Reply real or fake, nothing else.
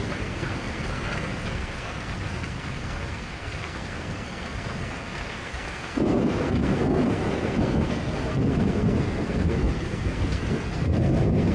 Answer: fake